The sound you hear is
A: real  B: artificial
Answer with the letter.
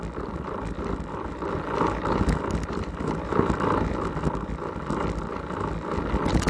A